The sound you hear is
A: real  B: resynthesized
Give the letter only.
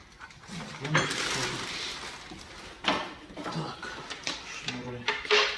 A